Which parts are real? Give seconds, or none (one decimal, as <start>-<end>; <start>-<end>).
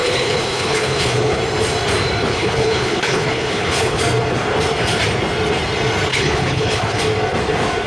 1.4-2.3; 4.0-6.1; 7.0-7.9